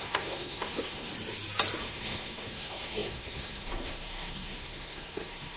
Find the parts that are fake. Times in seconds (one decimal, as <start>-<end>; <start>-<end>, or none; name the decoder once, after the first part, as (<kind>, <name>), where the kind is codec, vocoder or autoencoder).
0.0-1.1 (codec, SNAC); 1.8-5.6